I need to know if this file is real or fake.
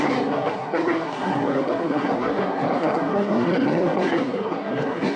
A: fake